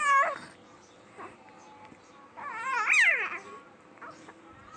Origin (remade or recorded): recorded